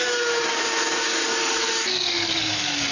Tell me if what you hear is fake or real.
fake